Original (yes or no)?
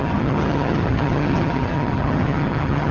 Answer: no